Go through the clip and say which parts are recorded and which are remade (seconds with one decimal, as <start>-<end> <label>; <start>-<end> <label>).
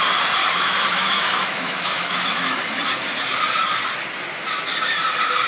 0.0-0.4 recorded; 0.4-2.6 remade; 2.6-5.5 recorded